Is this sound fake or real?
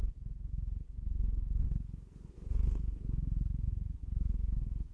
fake